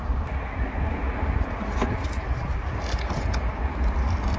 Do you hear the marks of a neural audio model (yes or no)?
no